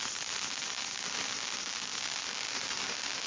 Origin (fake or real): real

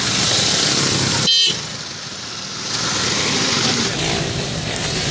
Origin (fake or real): real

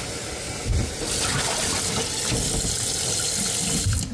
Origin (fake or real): real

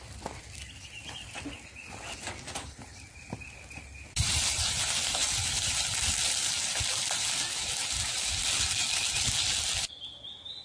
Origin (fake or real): real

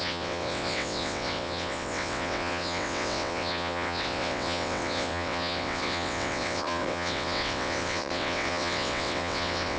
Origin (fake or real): fake